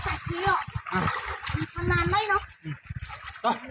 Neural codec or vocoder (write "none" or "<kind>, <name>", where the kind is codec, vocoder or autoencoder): none